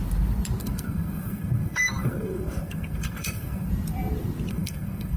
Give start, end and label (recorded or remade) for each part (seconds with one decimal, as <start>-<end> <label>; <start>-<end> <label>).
0.0-0.6 recorded; 0.6-3.7 remade; 3.7-4.5 recorded; 4.5-5.2 remade